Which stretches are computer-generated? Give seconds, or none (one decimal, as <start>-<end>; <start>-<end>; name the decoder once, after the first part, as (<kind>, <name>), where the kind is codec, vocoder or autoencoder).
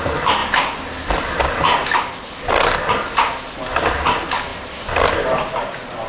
none